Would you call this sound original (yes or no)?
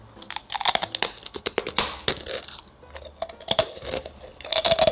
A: yes